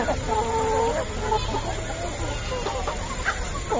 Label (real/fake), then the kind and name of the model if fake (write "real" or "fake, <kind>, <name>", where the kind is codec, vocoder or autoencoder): real